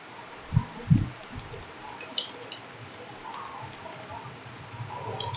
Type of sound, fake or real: real